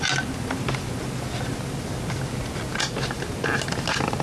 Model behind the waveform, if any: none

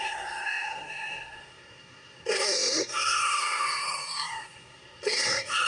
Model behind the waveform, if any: codec, SNAC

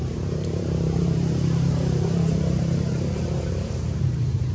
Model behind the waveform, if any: vocoder, BigVGAN v2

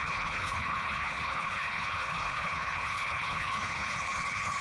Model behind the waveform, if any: codec, HILCodec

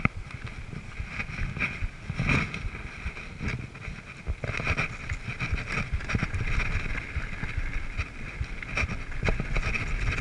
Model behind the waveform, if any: none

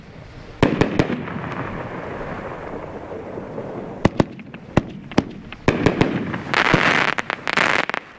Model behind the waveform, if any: none